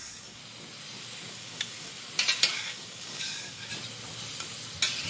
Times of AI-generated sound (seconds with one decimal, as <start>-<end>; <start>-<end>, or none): 0.0-0.4; 1.3-1.9; 2.5-3.7